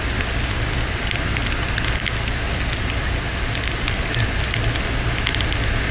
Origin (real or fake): real